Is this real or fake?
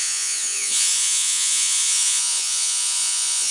fake